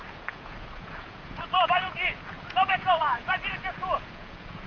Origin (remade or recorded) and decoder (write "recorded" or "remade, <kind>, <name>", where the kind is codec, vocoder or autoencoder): remade, vocoder, Vocos